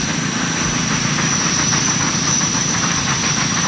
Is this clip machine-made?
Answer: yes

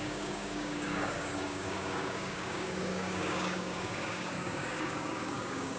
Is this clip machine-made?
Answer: yes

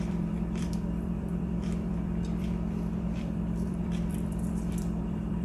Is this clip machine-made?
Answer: yes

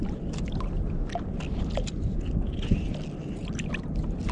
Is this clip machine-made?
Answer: no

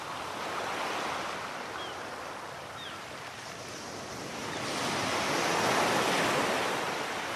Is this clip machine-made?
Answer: no